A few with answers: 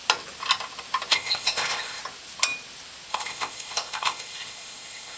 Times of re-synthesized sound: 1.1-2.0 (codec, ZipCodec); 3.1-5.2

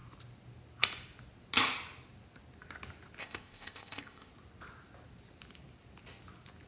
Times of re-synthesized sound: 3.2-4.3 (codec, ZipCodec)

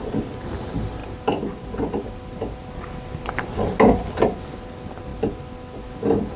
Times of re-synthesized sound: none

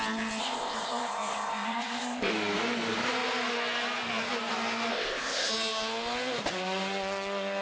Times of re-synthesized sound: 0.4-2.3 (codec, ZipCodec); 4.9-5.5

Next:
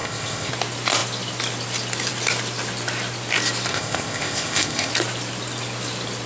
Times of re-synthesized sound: 0.0-0.5 (codec, ZipCodec); 3.7-4.9

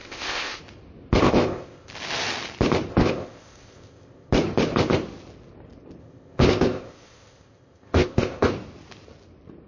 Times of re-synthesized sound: 0.0-0.6 (codec, ZipCodec); 1.2-1.9; 2.9-4.3; 6.0-8.5

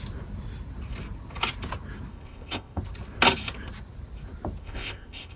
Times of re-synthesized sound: 2.1-2.8 (codec, ZipCodec); 4.6-5.4

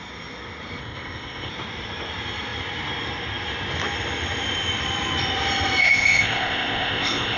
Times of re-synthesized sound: 0.8-1.5 (codec, ZipCodec); 5.8-7.4